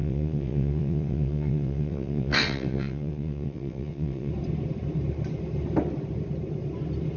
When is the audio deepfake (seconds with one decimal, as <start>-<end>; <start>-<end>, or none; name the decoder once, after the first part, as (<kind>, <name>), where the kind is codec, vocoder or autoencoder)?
0.0-4.3 (vocoder, WaveNeXt)